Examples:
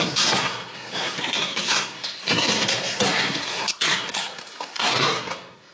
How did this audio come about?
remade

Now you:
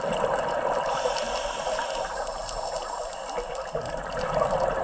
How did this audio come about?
recorded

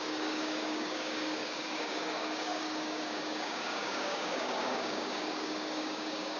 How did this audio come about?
remade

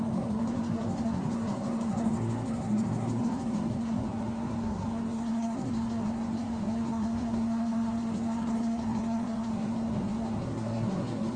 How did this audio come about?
remade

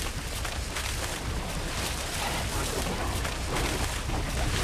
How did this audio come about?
recorded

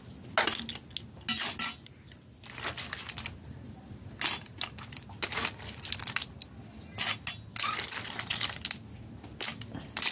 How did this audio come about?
recorded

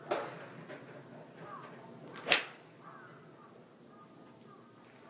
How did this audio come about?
recorded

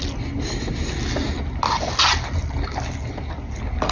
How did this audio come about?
recorded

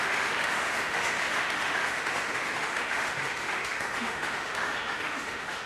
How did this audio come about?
remade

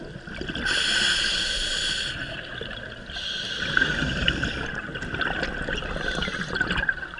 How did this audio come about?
recorded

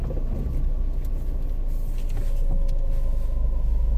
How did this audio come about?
recorded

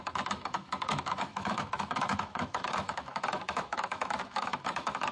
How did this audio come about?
remade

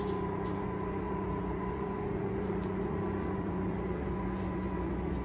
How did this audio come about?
remade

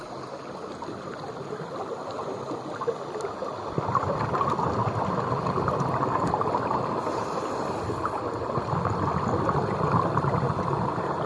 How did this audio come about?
recorded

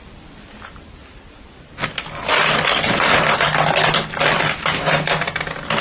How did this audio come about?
recorded